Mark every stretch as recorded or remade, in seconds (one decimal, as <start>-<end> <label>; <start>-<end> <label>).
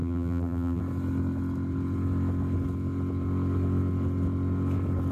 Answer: 0.0-0.8 remade; 0.8-5.1 recorded